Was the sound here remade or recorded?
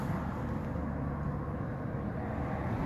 recorded